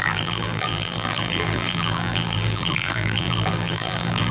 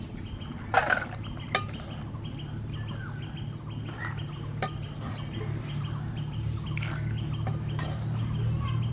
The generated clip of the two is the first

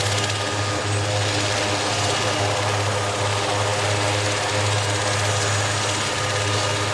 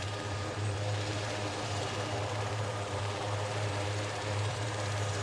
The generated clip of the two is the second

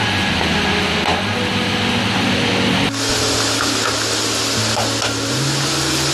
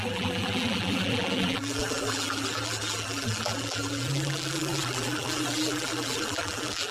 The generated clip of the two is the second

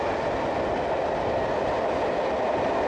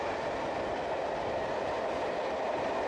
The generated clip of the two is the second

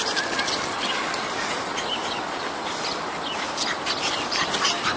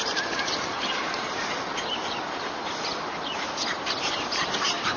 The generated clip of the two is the second